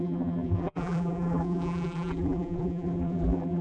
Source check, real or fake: fake